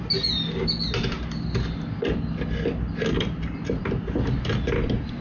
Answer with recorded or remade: recorded